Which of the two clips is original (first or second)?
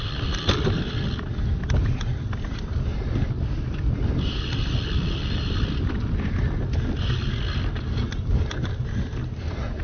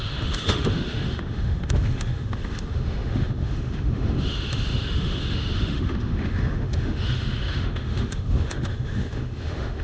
first